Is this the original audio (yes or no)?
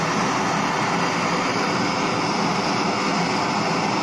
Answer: yes